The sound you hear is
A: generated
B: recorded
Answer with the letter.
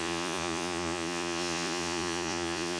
A